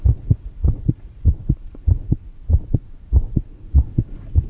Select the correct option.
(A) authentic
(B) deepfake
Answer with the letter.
B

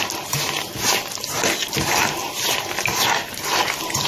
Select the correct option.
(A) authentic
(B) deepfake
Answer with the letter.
A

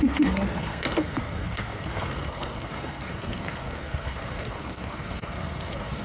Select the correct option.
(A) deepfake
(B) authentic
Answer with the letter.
A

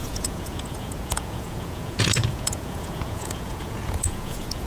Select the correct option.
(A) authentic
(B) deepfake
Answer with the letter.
B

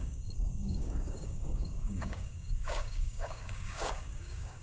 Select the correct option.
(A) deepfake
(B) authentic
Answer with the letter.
A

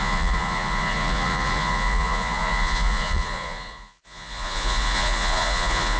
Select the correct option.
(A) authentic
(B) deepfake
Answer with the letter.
B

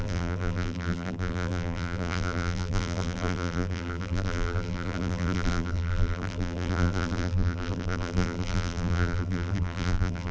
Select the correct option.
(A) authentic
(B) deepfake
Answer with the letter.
B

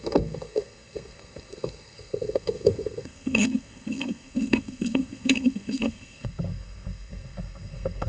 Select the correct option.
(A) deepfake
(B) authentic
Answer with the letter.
A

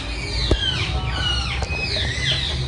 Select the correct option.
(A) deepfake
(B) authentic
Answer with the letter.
B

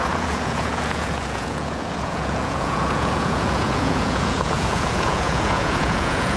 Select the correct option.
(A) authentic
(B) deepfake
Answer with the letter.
B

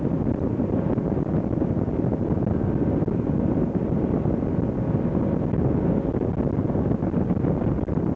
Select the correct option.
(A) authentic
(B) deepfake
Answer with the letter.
A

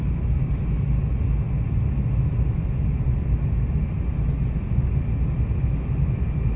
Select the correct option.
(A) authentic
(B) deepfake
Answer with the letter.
A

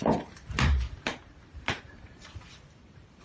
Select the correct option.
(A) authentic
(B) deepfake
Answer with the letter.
B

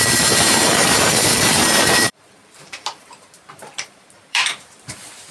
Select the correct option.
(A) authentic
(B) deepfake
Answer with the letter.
B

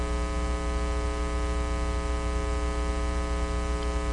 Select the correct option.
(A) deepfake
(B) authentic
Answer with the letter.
B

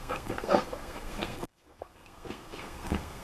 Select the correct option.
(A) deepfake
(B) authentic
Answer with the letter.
A